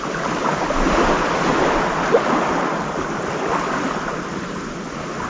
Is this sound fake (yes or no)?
no